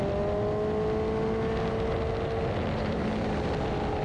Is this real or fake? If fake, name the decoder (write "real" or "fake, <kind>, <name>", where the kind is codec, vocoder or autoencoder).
real